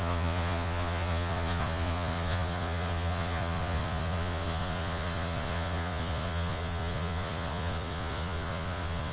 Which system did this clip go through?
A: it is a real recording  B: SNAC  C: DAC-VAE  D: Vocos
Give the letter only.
D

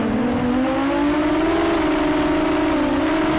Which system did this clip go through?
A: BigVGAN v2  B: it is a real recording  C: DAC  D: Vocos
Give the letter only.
B